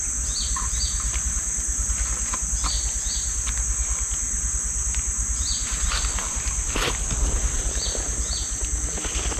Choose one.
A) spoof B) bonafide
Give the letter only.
B